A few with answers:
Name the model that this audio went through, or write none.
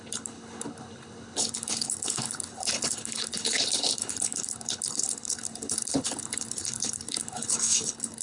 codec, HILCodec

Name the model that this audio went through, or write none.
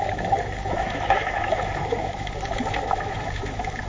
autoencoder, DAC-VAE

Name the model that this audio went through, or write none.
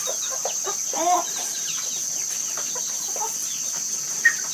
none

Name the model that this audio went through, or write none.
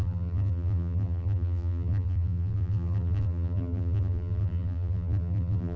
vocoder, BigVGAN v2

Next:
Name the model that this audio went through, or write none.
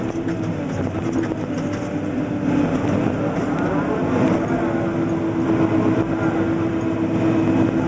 none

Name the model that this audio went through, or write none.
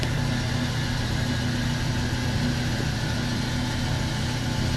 none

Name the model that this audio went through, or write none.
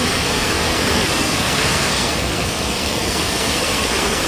codec, SNAC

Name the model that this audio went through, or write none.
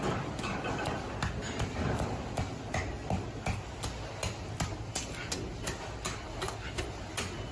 none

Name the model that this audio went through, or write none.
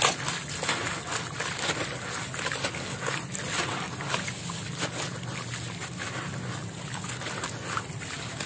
none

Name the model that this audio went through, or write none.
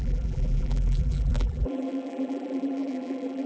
vocoder, BigVGAN v2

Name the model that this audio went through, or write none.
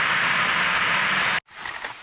none